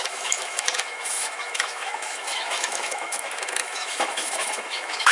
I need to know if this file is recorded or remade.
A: remade